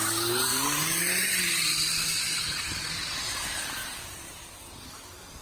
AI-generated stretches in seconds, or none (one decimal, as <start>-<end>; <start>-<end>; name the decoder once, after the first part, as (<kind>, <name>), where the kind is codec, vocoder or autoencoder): 0.5-1.0 (vocoder, BigVGAN v2)